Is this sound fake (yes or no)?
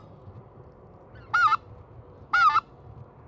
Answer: no